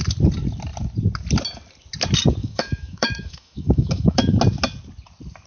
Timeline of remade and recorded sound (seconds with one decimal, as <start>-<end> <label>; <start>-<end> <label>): 0.0-2.4 recorded; 2.4-4.4 remade; 4.4-5.5 recorded